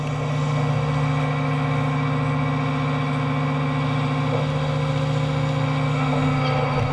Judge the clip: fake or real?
real